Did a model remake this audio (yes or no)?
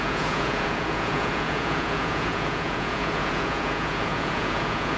yes